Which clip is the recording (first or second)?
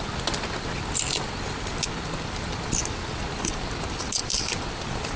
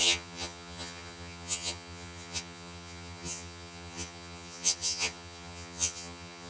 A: first